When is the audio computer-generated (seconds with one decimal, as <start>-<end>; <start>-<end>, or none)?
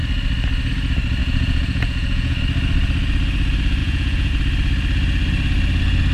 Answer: 1.2-2.4; 3.8-4.3